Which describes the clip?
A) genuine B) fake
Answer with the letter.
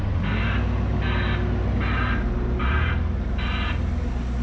A